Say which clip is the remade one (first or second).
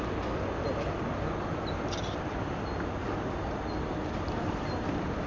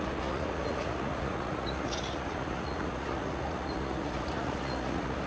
second